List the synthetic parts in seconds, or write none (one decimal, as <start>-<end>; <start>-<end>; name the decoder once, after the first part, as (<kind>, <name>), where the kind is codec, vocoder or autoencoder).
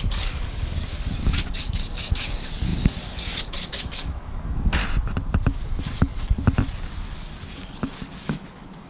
0.0-4.8 (codec, DAC); 7.1-8.9